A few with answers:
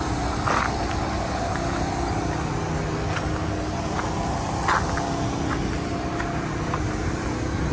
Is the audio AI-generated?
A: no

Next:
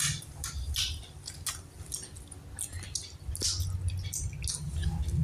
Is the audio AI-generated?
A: no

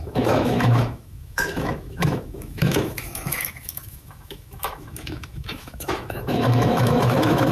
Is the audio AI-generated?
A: yes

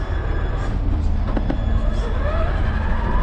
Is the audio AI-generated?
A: no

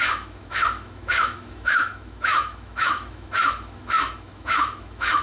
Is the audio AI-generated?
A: yes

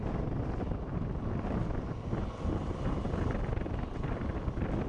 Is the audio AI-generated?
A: no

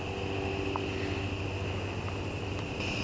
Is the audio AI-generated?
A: no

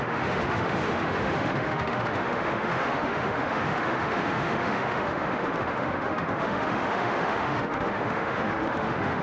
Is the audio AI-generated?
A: yes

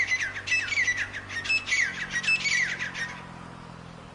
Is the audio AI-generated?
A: no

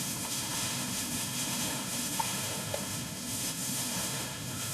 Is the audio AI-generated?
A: yes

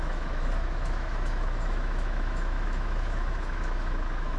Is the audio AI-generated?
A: yes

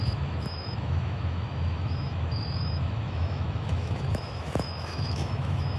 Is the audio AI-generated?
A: yes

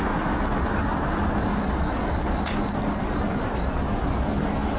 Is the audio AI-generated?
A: no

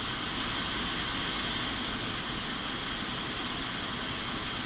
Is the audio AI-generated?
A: no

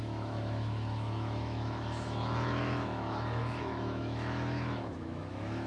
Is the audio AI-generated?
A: yes